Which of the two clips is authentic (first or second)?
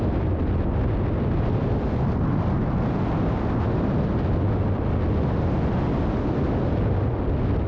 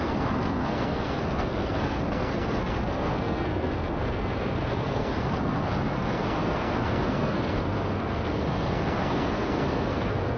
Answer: first